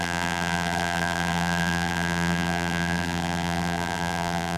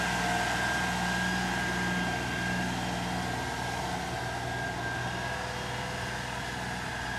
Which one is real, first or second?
second